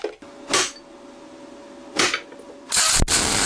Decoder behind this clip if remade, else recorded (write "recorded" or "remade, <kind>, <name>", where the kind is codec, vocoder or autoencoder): recorded